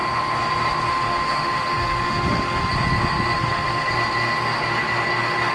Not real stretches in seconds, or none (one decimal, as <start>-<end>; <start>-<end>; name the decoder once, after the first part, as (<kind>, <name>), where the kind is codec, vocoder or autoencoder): 0.9-2.7 (autoencoder, DAC-VAE); 3.4-3.9